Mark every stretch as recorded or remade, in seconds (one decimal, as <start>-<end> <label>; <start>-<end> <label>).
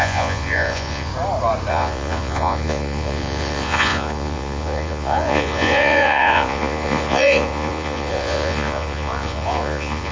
0.0-1.1 remade; 1.1-1.7 recorded; 1.7-10.1 remade